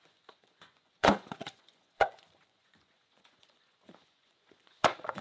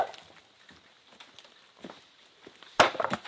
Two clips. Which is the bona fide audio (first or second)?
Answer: second